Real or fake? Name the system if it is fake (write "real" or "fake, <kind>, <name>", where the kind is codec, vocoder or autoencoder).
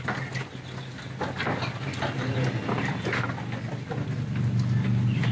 real